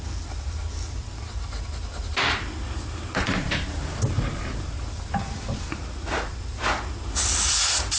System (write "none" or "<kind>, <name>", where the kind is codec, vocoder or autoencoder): none